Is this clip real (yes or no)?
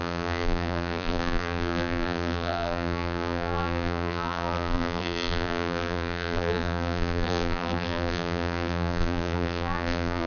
no